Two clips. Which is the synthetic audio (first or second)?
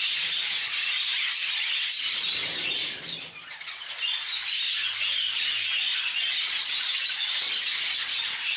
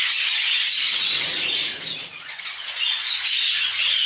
second